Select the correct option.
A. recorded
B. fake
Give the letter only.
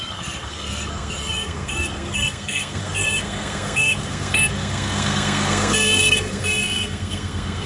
B